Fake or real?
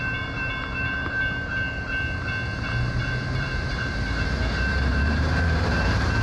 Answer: fake